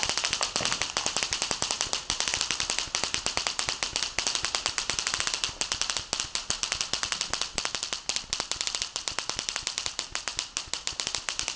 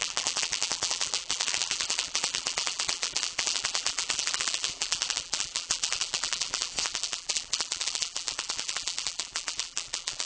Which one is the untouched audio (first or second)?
first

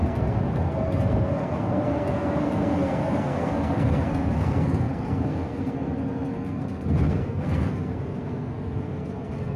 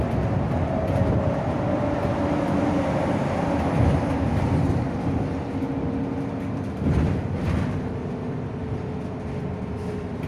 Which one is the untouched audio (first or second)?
second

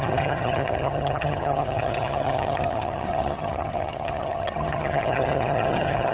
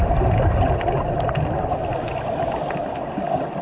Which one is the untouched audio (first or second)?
second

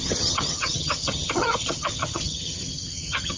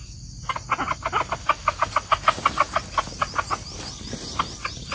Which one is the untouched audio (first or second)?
second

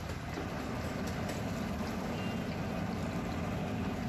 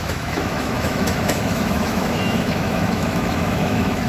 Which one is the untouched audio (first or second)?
first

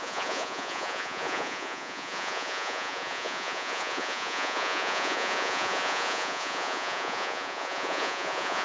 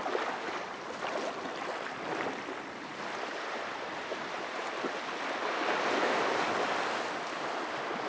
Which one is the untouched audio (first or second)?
second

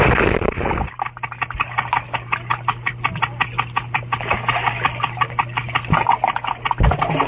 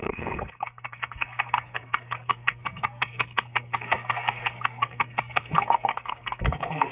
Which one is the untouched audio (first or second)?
first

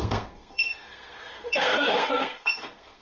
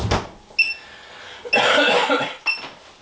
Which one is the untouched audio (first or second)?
second